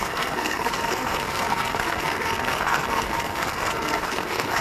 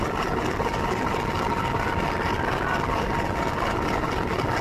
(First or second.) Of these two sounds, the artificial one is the first